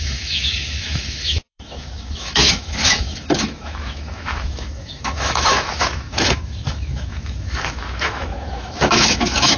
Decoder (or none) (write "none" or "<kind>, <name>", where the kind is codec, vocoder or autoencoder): autoencoder, DAC-VAE